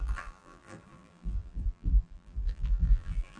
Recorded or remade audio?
remade